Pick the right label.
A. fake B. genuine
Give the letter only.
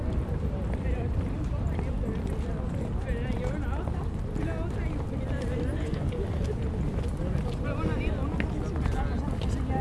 B